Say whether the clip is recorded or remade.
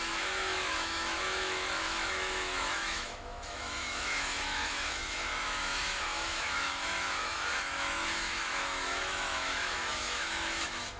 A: remade